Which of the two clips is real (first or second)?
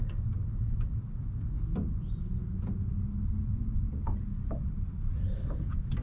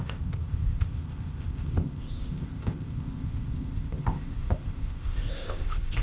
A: first